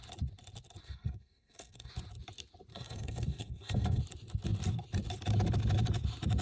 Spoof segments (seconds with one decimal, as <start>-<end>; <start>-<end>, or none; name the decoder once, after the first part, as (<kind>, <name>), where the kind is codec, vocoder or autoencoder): 0.8-1.9 (codec, SNAC); 2.7-4.0